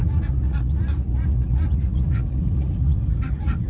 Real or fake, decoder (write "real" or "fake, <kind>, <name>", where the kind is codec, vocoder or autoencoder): fake, vocoder, Vocos